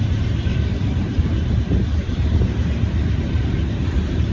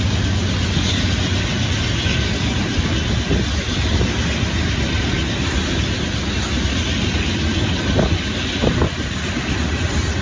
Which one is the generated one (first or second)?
first